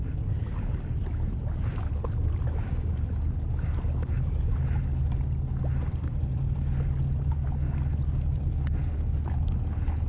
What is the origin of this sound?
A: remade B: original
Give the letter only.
B